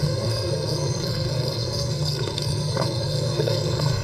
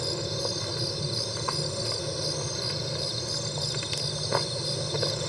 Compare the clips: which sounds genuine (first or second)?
second